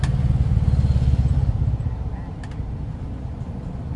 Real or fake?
real